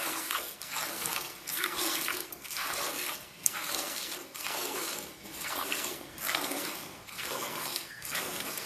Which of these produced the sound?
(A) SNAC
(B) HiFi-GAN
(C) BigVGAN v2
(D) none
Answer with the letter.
A